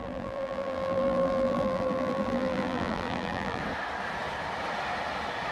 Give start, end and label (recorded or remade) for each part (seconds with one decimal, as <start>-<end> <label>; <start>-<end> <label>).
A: 0.0-3.6 remade; 3.6-5.5 recorded